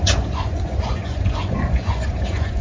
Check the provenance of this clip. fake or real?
fake